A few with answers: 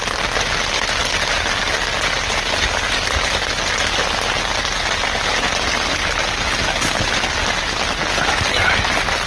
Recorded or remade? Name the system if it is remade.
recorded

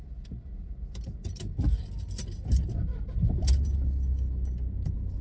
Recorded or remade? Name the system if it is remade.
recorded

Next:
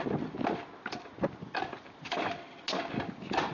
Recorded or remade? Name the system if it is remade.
recorded